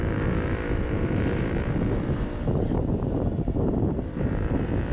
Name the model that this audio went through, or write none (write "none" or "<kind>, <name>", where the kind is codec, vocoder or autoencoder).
vocoder, BigVGAN v2